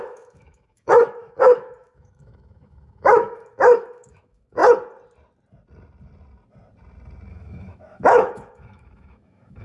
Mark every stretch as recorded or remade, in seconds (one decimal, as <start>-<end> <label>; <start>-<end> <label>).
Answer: 0.0-4.6 remade; 4.6-7.3 recorded; 7.3-9.6 remade